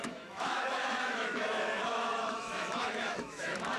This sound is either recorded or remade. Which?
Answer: remade